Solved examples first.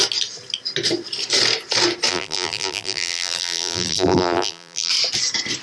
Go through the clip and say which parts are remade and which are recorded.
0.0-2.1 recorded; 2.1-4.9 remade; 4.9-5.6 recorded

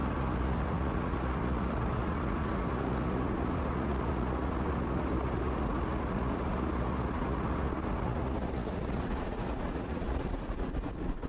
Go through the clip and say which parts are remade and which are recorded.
0.0-11.3 remade